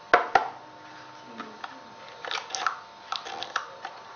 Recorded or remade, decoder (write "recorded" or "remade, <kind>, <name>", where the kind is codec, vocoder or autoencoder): recorded